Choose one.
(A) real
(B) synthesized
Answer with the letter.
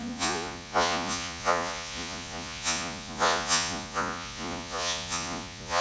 B